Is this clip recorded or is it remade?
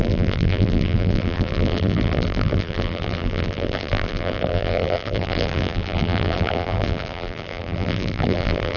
remade